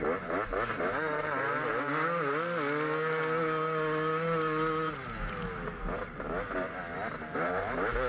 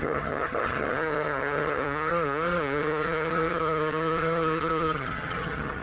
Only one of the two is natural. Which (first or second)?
first